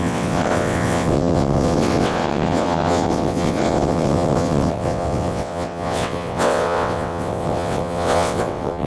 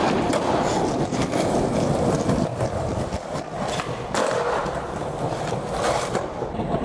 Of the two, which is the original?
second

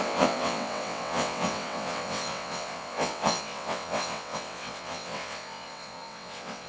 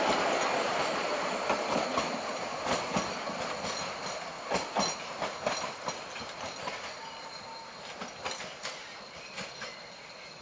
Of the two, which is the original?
second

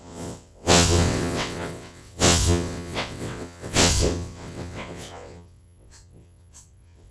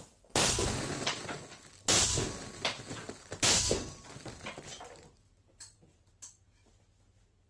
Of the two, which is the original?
second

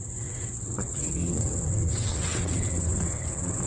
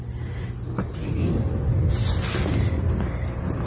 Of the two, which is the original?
second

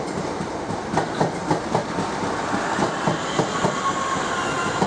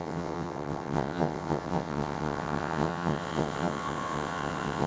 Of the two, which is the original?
first